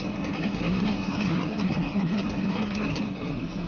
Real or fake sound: fake